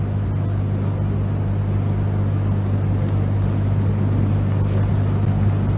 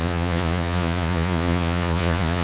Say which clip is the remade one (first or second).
second